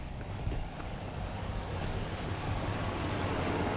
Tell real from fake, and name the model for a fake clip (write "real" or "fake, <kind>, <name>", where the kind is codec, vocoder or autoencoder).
fake, codec, DAC